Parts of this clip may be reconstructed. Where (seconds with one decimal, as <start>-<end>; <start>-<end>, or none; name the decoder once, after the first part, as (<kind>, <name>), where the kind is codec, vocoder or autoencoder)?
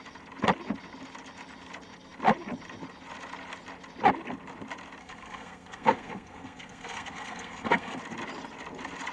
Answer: 5.0-8.0 (codec, SNAC)